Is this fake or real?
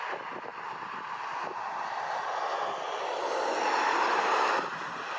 real